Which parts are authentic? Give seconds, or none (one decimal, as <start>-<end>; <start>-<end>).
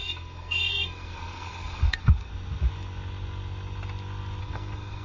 2.3-4.4